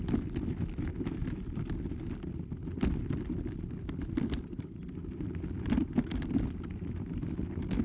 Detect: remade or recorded recorded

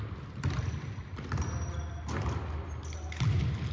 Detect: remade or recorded recorded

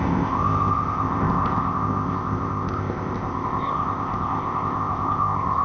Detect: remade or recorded remade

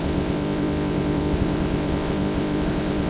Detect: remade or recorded remade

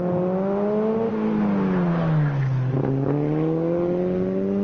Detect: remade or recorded recorded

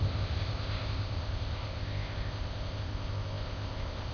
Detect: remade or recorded remade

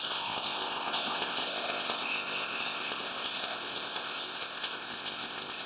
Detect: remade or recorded remade